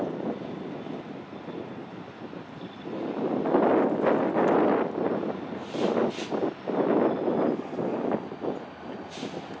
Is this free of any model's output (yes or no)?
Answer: yes